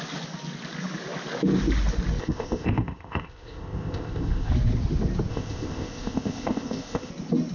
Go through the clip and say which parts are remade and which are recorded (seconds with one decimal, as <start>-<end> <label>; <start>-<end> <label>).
0.0-2.2 recorded; 2.2-4.5 remade; 4.5-5.3 recorded; 5.3-7.1 remade; 7.1-7.5 recorded